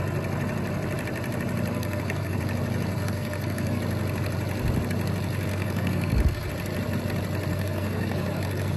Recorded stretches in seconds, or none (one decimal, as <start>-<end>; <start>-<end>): 0.0-1.7; 2.4-2.9; 3.8-5.5; 6.5-7.5